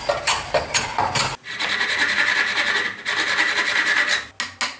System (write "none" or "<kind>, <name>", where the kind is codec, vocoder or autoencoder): none